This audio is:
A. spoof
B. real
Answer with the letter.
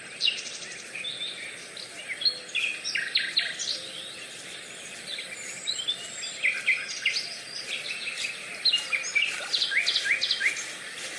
B